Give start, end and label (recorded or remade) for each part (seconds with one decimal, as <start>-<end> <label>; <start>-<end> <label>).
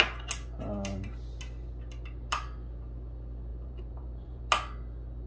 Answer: 0.0-3.5 recorded; 3.5-4.4 remade; 4.4-5.3 recorded